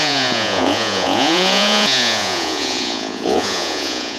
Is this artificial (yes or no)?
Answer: yes